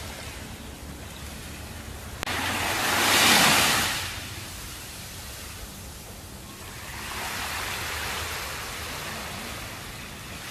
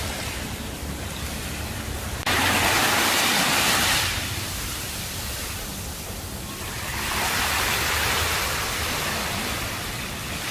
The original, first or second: first